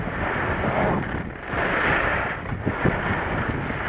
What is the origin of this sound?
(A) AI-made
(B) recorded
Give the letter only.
B